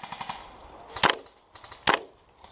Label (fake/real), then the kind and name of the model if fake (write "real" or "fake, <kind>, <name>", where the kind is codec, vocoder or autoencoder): real